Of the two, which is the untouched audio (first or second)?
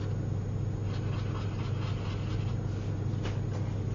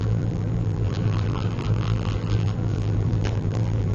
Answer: first